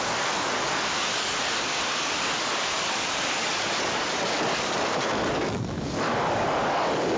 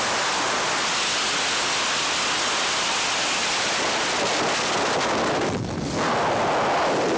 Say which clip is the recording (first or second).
second